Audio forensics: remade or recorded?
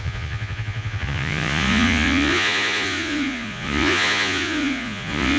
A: remade